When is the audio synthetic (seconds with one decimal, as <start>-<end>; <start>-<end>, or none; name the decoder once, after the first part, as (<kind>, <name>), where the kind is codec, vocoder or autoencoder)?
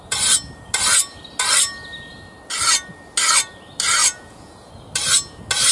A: 4.0-4.7 (vocoder, Vocos)